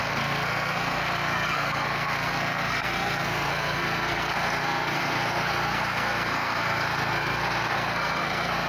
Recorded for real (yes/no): no